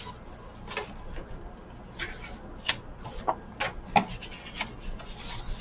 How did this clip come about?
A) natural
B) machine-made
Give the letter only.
A